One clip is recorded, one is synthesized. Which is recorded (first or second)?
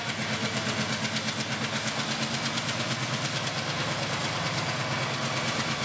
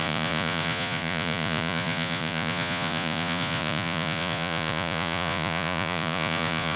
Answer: first